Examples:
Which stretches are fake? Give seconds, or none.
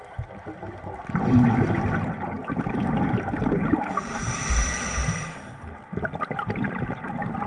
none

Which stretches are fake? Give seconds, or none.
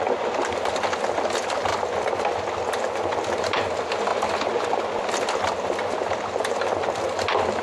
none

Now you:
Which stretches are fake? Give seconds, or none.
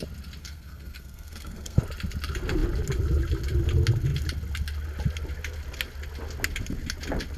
0.4-1.8 (codec, SNAC)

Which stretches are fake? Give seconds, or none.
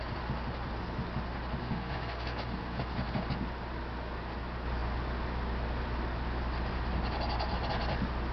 1.6-3.2 (codec, SNAC)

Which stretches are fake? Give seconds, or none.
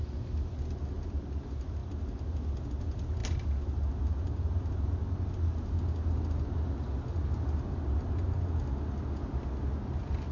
none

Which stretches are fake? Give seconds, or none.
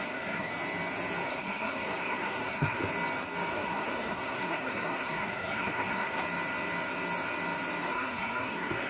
0.0-0.5 (codec, SNAC); 1.3-2.8; 3.5-6.2; 7.8-8.9